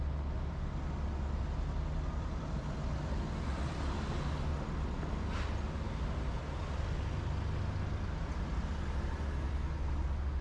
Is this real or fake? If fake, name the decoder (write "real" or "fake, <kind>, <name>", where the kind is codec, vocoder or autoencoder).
real